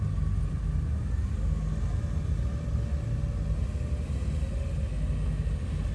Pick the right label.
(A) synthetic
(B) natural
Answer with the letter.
B